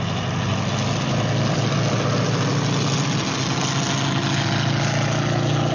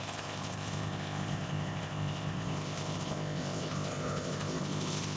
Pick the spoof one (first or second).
second